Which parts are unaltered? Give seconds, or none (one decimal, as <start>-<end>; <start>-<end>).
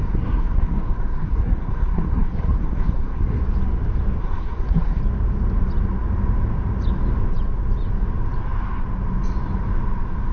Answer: 3.4-4.2; 5.0-10.3